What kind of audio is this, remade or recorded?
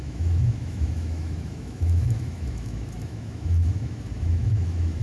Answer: remade